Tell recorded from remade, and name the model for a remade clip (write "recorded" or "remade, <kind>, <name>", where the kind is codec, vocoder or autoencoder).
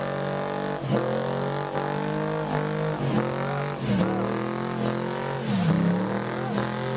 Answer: recorded